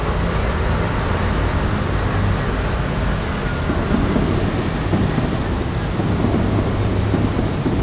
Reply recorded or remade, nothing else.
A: recorded